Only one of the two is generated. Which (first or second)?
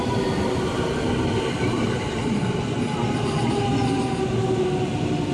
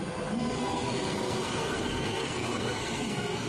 second